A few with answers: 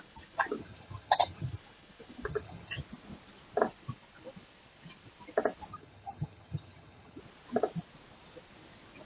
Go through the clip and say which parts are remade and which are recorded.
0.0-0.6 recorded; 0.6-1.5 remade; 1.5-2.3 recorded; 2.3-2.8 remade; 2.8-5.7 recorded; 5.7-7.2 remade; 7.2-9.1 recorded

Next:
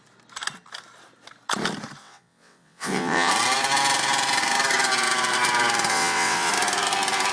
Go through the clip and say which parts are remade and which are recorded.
0.0-2.0 recorded; 2.0-3.3 remade; 3.3-5.9 recorded; 5.9-6.5 remade; 6.5-7.3 recorded

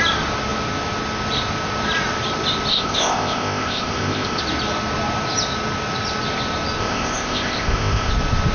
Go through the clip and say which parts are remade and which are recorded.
0.0-2.7 recorded; 2.7-4.4 remade; 4.4-6.8 recorded; 6.8-8.1 remade; 8.1-8.5 recorded

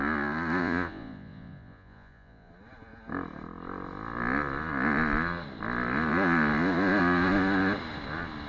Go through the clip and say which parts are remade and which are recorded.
0.0-0.6 recorded; 0.6-2.5 remade; 2.5-8.5 recorded